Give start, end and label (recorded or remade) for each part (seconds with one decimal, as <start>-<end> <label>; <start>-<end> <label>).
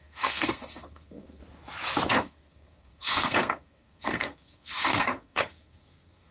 0.0-1.4 remade; 1.4-2.1 recorded; 2.1-6.3 remade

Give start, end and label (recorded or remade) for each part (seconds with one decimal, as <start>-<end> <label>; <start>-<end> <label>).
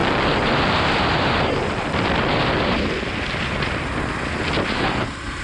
0.0-5.4 recorded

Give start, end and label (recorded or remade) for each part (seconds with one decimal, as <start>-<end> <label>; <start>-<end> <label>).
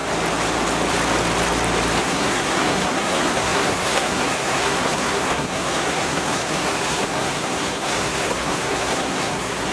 0.0-2.0 recorded; 2.0-9.7 remade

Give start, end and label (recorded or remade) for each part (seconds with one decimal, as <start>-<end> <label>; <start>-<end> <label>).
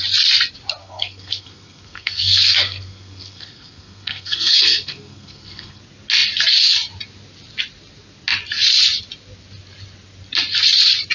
0.0-0.8 recorded; 0.8-5.8 remade; 5.8-11.1 recorded